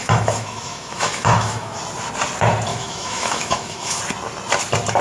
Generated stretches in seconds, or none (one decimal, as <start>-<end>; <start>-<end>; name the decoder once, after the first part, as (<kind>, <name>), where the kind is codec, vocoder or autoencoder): 0.0-1.8 (autoencoder, DAC-VAE); 2.7-4.0